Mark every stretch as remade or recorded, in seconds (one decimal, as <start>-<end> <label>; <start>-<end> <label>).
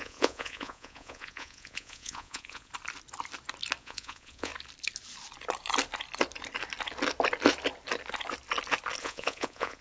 0.0-2.7 remade; 2.7-3.8 recorded; 3.8-4.5 remade; 4.5-9.0 recorded; 9.0-9.8 remade